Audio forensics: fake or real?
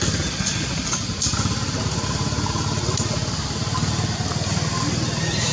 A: real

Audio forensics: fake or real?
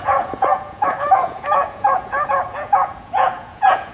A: fake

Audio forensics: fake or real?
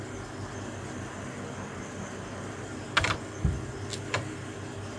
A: real